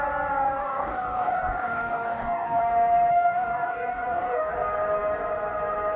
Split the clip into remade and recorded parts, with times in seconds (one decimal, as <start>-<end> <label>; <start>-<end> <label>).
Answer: 0.0-0.4 recorded; 0.4-2.6 remade; 2.6-3.1 recorded; 3.1-4.5 remade; 4.5-6.0 recorded